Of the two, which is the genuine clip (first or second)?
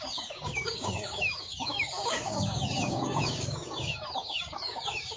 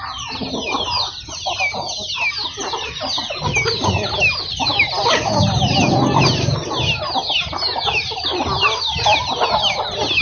second